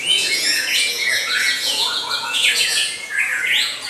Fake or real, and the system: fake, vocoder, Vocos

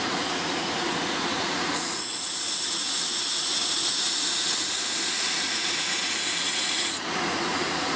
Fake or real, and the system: fake, vocoder, Vocos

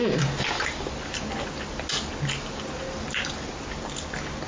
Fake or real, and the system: real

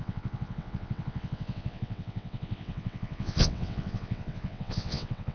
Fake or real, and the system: fake, vocoder, WaveNeXt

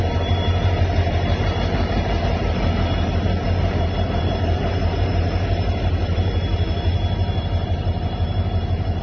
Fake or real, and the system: fake, vocoder, BigVGAN v2